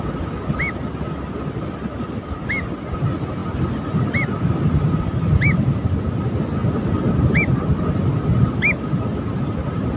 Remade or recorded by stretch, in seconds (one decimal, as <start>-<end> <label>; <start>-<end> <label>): 0.0-10.0 recorded